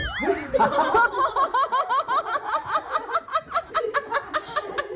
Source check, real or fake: real